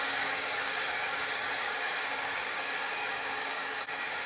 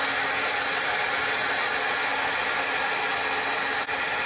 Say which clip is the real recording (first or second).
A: second